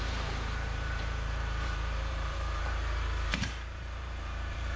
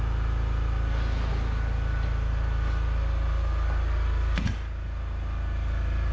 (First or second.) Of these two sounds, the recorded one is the second